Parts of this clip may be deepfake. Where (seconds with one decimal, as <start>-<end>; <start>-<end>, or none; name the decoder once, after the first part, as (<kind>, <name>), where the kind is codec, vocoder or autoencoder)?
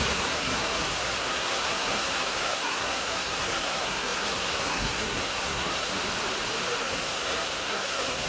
0.0-5.9 (codec, SNAC); 6.8-8.3